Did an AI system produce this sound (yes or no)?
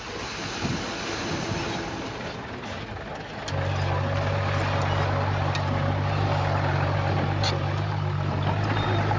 no